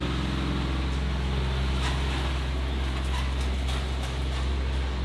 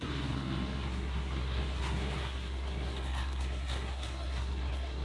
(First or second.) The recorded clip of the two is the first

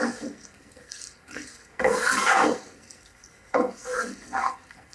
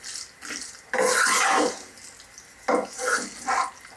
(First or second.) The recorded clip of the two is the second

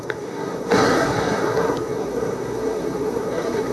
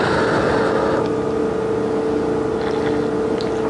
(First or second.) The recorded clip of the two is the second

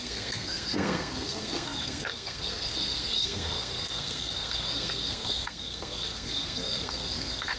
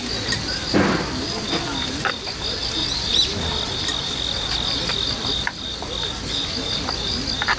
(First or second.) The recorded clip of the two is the second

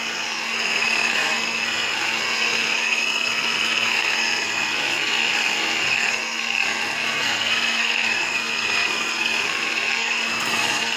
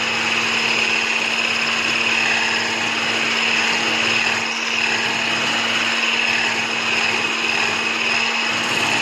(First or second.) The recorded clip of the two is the second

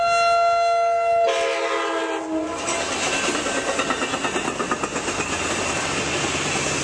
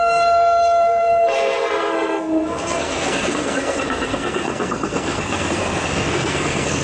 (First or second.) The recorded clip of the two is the first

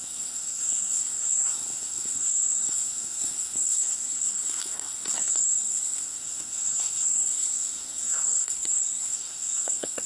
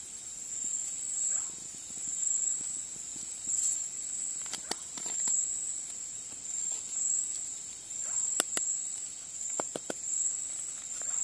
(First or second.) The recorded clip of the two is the second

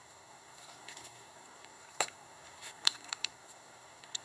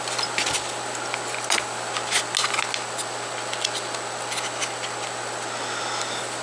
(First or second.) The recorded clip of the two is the second